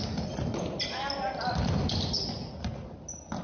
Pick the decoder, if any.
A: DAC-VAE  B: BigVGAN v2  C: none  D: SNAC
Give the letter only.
C